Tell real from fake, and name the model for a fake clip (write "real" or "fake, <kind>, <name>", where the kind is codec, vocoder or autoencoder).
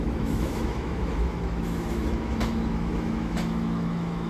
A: fake, autoencoder, DAC-VAE